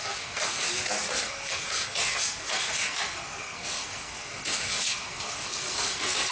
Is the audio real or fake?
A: fake